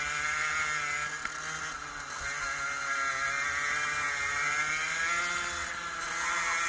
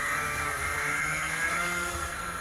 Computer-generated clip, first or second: second